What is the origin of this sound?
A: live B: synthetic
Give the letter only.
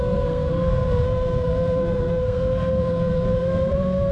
B